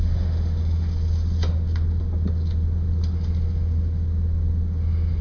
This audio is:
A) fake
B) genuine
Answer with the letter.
B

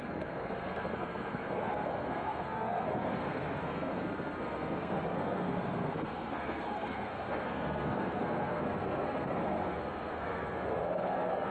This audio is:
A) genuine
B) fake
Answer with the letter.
B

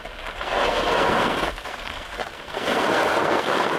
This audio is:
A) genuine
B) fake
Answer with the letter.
B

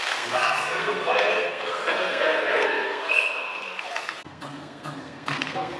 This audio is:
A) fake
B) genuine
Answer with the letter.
A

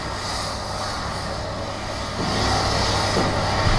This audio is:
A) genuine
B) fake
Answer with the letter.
A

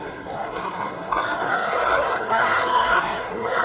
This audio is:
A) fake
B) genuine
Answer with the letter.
A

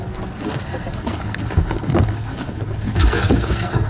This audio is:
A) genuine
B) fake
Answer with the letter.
B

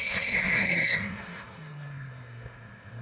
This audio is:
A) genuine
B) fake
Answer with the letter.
B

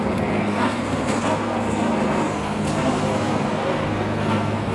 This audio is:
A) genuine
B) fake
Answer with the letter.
B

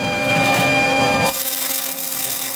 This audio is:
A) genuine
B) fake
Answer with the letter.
B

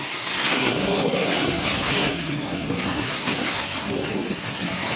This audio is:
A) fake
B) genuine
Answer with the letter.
A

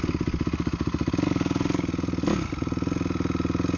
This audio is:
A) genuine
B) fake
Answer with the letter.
A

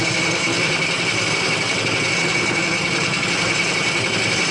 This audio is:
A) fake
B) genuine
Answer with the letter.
B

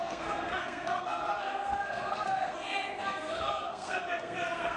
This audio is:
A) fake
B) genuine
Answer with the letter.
A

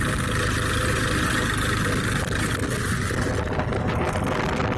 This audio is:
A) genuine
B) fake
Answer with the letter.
A